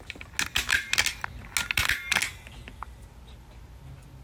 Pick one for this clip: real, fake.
real